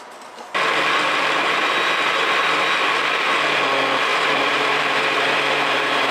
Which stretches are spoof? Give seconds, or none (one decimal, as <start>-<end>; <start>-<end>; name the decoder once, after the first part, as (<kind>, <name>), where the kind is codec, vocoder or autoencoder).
4.1-6.1 (vocoder, BigVGAN v2)